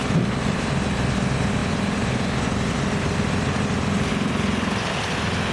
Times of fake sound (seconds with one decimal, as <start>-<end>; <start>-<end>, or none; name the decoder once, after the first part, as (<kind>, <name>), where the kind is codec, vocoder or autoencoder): none